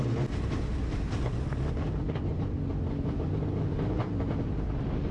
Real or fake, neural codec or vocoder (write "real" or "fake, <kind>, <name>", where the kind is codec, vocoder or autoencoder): real